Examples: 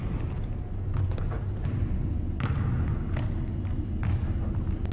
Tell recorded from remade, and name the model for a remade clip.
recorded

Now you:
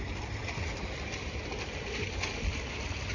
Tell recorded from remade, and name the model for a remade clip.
recorded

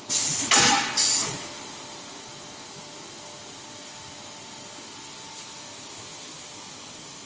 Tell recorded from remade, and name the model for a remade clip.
recorded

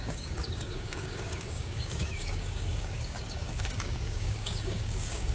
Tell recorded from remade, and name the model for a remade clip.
remade, codec, DAC